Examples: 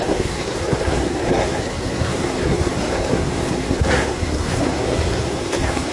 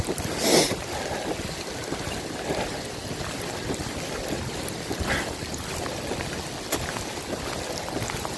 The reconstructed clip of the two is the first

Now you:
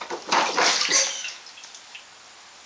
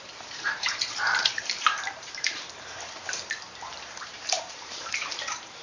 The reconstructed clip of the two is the second